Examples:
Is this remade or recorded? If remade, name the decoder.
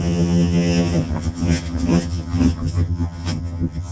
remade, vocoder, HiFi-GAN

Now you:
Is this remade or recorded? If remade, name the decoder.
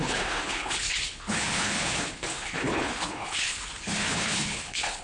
remade, codec, HILCodec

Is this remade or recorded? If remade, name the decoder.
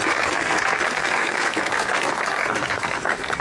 remade, codec, SNAC